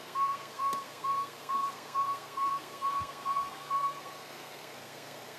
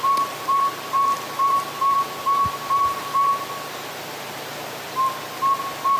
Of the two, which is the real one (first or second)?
second